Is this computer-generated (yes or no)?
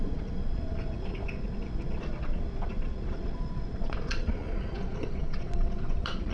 yes